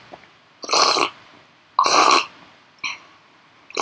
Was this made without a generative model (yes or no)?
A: yes